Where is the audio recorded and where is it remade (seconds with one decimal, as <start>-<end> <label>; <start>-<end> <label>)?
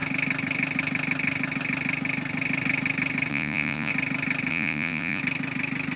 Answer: 0.0-3.3 recorded; 3.3-3.9 remade; 3.9-4.5 recorded; 4.5-5.2 remade; 5.2-6.0 recorded